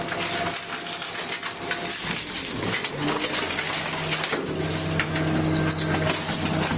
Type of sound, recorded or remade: recorded